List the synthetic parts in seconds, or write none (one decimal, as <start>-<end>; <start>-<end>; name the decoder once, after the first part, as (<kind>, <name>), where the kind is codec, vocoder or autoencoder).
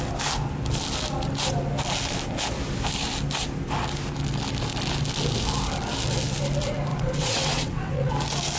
6.9-8.1 (vocoder, WaveNeXt)